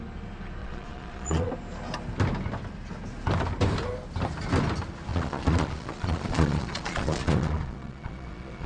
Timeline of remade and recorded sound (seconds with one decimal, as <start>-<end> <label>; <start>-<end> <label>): 0.0-0.6 recorded; 0.6-1.5 remade; 1.5-5.1 recorded; 5.1-8.7 remade